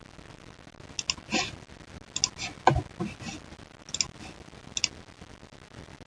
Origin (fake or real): real